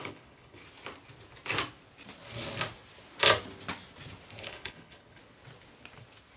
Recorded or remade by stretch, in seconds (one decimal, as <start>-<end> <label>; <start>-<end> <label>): 0.0-0.6 remade; 0.6-4.4 recorded; 4.4-5.2 remade; 5.2-6.4 recorded